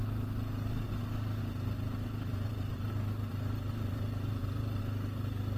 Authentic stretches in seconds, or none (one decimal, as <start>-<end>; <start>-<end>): 0.0-1.4; 4.8-5.6

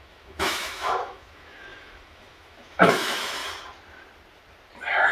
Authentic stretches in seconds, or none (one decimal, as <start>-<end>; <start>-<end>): 3.4-5.1